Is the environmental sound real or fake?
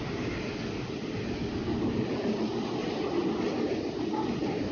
real